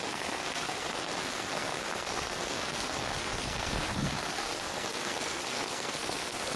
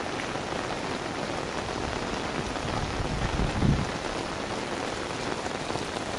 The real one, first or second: second